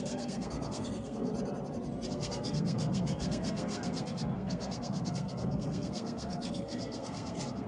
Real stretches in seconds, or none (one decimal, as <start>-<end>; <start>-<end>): 1.3-2.1